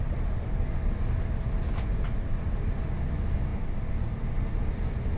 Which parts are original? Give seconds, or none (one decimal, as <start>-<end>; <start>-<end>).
0.0-5.2